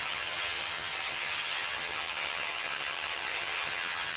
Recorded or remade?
remade